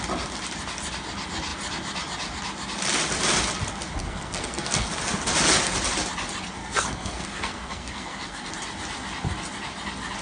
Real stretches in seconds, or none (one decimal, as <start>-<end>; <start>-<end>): 0.0-4.0; 4.9-6.6; 8.5-10.2

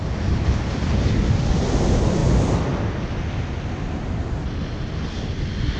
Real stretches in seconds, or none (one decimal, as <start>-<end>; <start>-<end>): 0.0-5.8